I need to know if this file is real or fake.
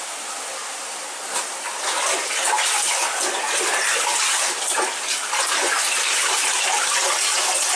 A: real